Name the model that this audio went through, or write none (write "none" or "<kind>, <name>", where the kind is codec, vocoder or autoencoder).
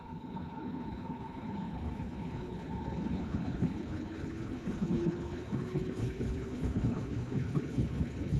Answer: codec, HILCodec